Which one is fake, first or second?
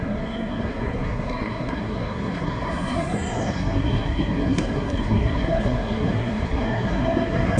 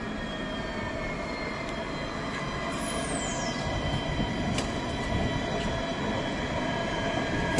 first